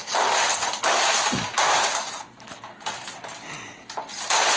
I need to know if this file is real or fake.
real